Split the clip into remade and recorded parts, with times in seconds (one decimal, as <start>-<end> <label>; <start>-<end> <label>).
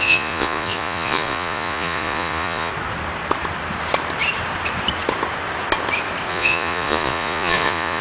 0.0-2.7 remade; 2.7-6.3 recorded; 6.3-8.0 remade